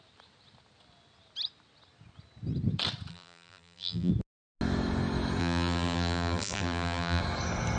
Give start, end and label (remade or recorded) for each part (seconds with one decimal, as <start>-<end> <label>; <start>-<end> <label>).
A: 0.0-3.1 recorded; 3.1-4.1 remade; 4.1-5.4 recorded; 5.4-7.2 remade; 7.2-7.8 recorded